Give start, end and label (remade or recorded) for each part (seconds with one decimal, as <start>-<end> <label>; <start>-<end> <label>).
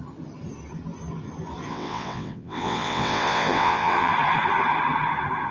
0.0-1.7 recorded; 1.7-4.1 remade; 4.1-5.5 recorded